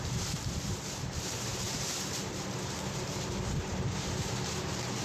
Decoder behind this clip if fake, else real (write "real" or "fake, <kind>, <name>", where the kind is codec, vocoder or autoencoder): fake, vocoder, BigVGAN v2